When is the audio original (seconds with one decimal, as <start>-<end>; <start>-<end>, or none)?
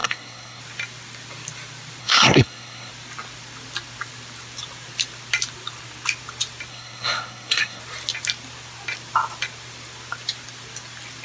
0.6-2.0; 2.9-6.7; 7.8-11.2